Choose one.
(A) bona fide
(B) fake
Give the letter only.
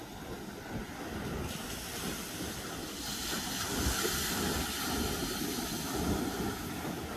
A